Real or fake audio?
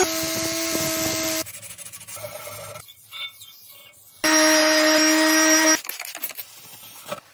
real